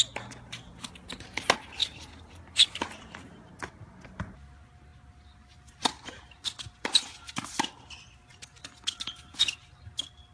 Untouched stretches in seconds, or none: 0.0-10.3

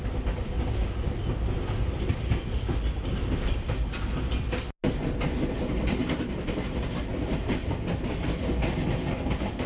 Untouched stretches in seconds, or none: 0.0-9.7